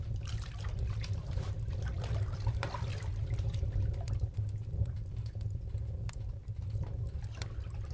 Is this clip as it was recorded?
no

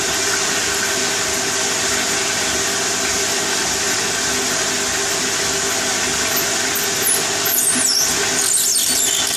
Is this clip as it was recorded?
yes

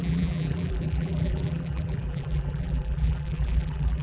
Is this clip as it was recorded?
no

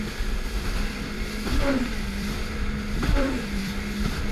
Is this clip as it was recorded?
no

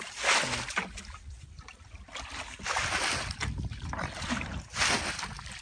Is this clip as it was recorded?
yes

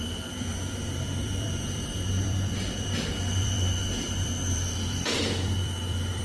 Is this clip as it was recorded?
no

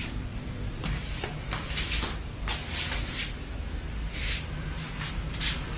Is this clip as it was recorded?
no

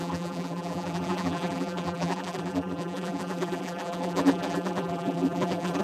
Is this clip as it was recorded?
no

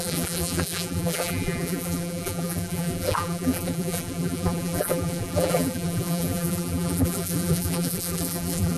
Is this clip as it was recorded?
no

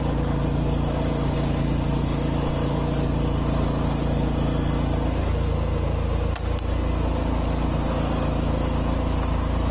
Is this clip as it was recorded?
yes